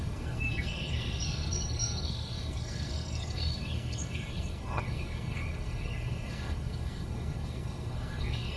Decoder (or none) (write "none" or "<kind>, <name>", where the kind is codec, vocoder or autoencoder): codec, SNAC